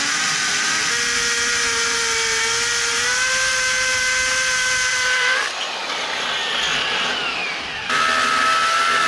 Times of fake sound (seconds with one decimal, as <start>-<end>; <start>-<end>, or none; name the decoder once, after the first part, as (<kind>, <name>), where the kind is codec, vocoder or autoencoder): 4.9-5.7 (vocoder, BigVGAN v2); 6.7-7.7